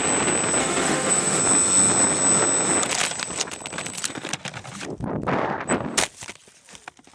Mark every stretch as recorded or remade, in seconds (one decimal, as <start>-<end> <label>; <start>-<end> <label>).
0.0-0.6 recorded; 0.6-1.4 remade; 1.4-7.1 recorded